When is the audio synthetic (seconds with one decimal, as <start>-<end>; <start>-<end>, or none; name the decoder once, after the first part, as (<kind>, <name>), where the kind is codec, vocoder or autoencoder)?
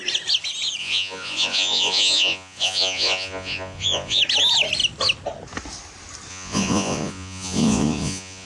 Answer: 0.8-4.2 (vocoder, Vocos); 6.3-8.5